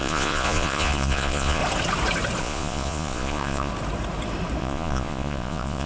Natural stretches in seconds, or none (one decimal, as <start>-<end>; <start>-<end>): 1.6-2.4; 3.7-4.6